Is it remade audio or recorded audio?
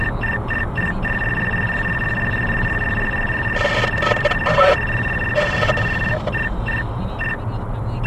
recorded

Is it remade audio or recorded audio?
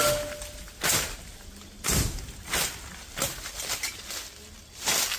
recorded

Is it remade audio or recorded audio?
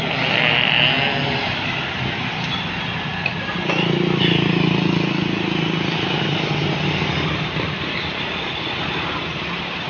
recorded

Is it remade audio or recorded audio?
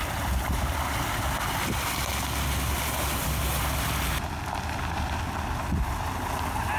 recorded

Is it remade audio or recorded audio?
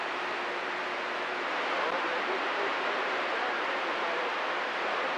remade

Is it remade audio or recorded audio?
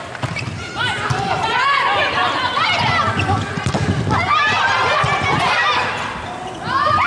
recorded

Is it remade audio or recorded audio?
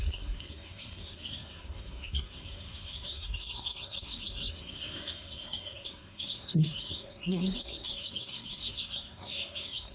remade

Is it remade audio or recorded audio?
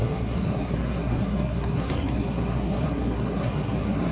remade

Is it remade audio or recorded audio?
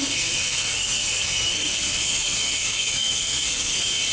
remade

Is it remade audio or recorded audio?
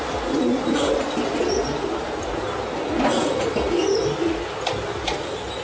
recorded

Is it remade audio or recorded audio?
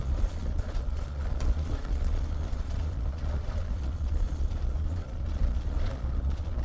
remade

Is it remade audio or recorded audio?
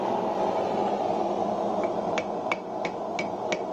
recorded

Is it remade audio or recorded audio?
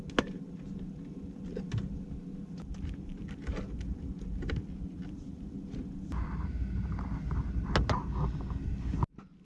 recorded